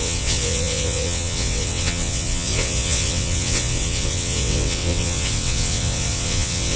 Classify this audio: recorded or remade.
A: remade